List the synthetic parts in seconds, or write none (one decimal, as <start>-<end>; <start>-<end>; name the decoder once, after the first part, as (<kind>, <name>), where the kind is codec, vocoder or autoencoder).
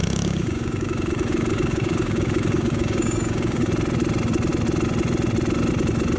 0.0-3.7 (codec, DAC)